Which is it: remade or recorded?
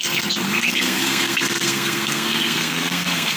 remade